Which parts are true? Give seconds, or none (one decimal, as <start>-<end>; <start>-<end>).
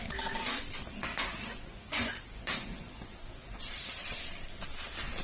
0.0-1.1; 3.6-5.2